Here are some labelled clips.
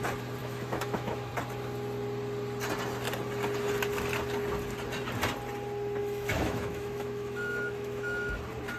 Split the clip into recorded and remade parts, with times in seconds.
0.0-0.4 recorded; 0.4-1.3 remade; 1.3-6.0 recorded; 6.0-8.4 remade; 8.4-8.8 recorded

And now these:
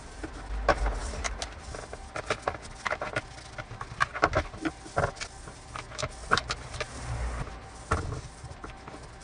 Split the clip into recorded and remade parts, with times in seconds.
0.0-6.2 recorded; 6.2-7.5 remade; 7.5-9.2 recorded

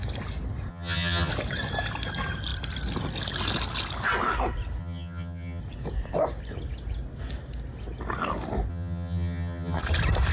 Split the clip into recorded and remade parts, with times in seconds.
0.0-0.7 recorded; 0.7-1.3 remade; 1.3-4.8 recorded; 4.8-5.6 remade; 5.6-8.7 recorded; 8.7-9.8 remade; 9.8-10.3 recorded

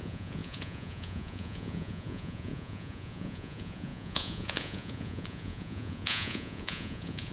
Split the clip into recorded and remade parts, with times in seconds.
0.0-7.3 remade

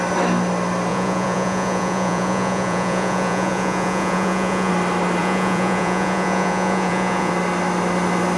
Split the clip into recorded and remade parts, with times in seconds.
0.0-0.9 recorded; 0.9-4.7 remade; 4.7-5.2 recorded; 5.2-7.3 remade; 7.3-8.4 recorded

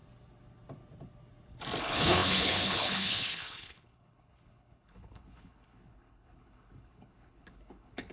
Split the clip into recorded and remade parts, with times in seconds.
0.0-1.8 recorded; 1.8-8.1 remade

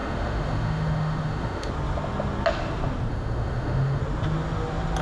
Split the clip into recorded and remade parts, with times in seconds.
0.0-1.7 remade; 1.7-3.1 recorded; 3.1-4.0 remade; 4.0-5.0 recorded

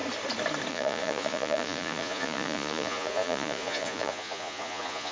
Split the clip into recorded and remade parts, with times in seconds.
0.0-0.7 recorded; 0.7-5.1 remade